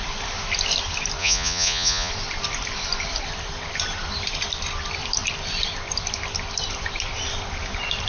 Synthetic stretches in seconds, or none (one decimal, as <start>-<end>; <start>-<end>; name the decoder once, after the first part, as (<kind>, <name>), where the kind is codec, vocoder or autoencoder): 1.2-2.1 (vocoder, Vocos)